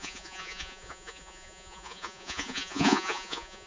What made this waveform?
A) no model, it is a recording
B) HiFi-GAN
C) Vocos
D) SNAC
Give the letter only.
C